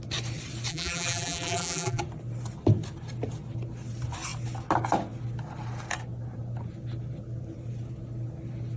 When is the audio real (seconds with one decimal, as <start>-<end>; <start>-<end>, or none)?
0.0-0.7; 2.0-8.8